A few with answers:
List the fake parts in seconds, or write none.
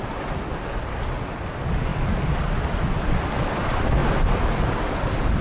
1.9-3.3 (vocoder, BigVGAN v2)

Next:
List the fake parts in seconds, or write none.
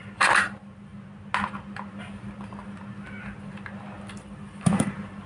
0.0-0.9 (vocoder, BigVGAN v2); 4.1-5.3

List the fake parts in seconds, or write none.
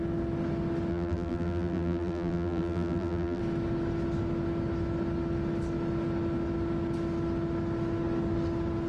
0.9-3.4 (vocoder, BigVGAN v2)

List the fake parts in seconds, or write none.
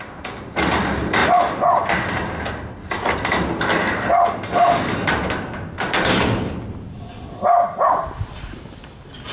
none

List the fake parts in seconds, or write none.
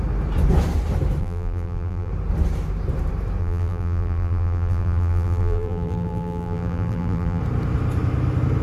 1.2-2.1 (vocoder, BigVGAN v2); 3.4-7.4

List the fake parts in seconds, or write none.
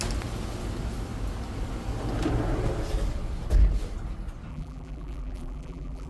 4.5-6.1 (vocoder, BigVGAN v2)